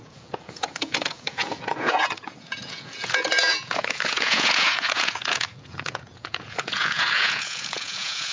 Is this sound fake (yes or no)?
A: yes